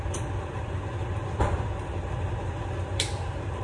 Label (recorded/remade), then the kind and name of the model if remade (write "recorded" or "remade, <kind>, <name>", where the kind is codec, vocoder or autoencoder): recorded